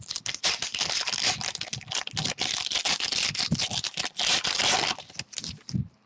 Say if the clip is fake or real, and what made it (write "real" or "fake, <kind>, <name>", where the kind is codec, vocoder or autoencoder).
real